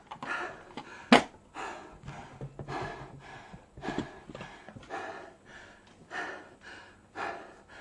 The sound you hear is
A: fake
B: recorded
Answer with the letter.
B